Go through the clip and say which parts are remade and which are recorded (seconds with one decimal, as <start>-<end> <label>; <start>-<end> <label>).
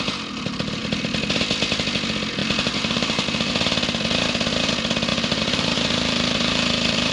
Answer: 0.0-2.4 recorded; 2.4-3.5 remade; 3.5-5.1 recorded; 5.1-7.1 remade